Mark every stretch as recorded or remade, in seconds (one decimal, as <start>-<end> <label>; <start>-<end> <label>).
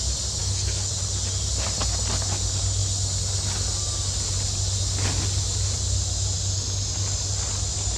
0.0-0.4 recorded; 0.4-0.9 remade; 0.9-8.0 recorded